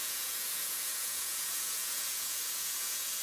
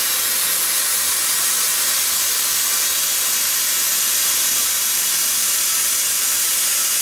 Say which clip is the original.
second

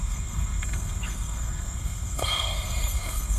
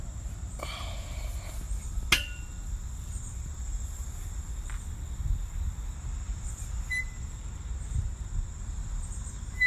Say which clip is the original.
second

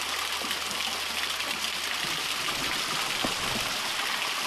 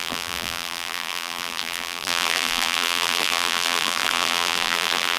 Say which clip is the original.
first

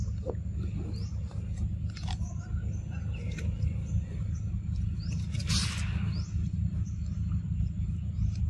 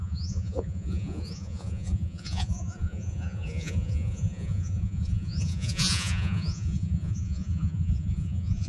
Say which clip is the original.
first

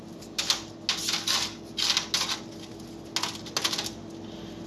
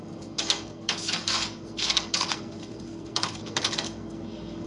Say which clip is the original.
first